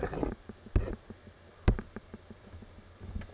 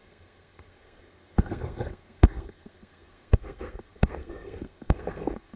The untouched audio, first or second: first